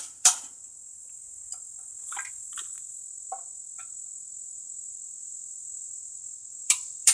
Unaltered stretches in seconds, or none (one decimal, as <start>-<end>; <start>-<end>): 1.4-2.3; 2.9-4.9